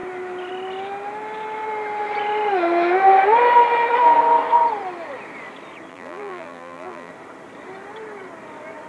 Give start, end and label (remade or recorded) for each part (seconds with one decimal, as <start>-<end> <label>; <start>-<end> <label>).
0.0-5.9 recorded; 5.9-7.1 remade; 7.1-8.9 recorded